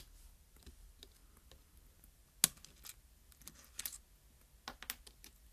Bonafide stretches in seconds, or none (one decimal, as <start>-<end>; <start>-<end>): 0.0-5.5